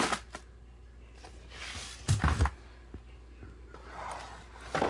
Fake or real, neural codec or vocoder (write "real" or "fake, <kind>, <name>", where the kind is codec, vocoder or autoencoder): real